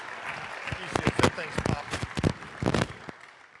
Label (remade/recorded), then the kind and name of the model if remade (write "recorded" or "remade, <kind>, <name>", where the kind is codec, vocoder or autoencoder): recorded